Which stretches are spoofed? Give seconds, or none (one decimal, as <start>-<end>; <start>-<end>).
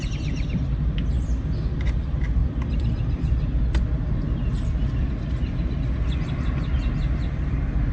none